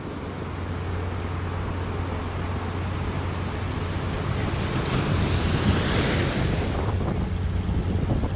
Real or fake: real